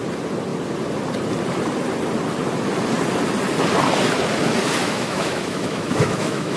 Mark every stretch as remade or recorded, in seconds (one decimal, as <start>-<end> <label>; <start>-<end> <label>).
0.0-4.8 recorded; 4.8-6.6 remade